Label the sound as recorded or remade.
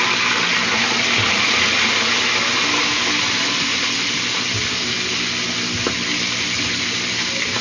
recorded